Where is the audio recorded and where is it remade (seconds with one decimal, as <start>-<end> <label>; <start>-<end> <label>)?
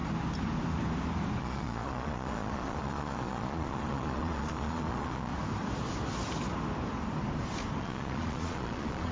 0.0-1.4 recorded; 1.4-5.3 remade; 5.3-7.8 recorded; 7.8-9.1 remade